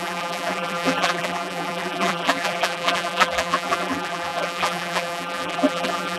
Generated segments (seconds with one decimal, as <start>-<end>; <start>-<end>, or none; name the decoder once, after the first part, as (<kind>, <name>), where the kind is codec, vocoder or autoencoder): 0.0-6.2 (vocoder, BigVGAN v2)